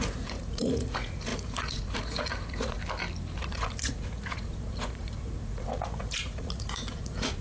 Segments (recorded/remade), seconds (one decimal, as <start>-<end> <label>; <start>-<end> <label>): 0.0-2.8 remade; 2.8-3.4 recorded; 3.4-7.4 remade